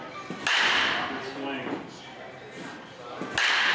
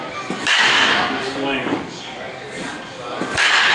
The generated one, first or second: second